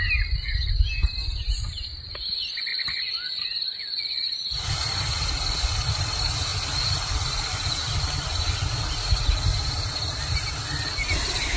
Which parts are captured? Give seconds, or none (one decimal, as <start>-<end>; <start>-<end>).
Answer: 0.0-2.7; 5.3-6.5; 8.8-11.6